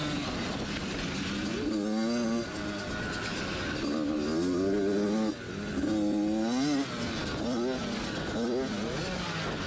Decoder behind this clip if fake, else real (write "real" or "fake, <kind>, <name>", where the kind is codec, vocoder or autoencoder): real